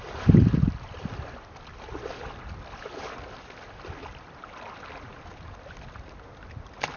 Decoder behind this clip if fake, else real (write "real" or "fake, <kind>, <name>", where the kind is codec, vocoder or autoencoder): real